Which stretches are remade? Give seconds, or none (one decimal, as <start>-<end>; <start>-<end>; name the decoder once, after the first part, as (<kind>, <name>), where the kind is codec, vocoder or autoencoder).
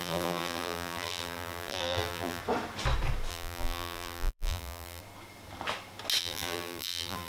0.0-2.4 (vocoder, BigVGAN v2); 3.3-5.0; 6.2-7.3